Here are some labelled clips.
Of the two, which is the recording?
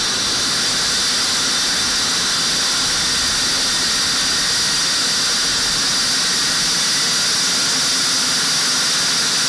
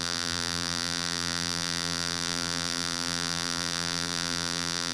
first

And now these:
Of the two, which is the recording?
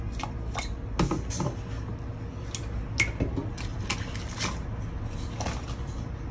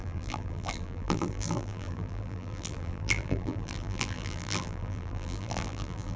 first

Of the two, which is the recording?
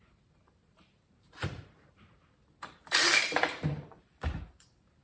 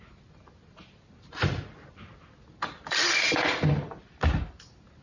second